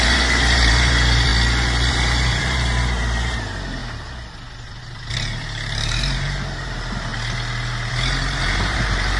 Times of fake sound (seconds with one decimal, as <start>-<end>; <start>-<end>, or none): 0.0-1.3; 1.9-3.8; 4.8-7.1; 7.9-9.2